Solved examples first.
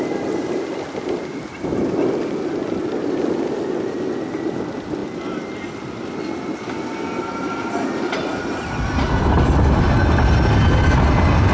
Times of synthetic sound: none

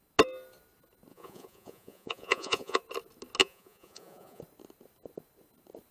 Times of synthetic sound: 1.1-2.8 (vocoder, Vocos); 3.4-4.4